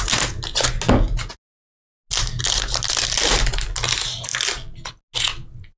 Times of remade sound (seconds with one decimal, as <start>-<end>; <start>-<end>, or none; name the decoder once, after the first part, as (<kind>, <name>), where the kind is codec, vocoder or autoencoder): none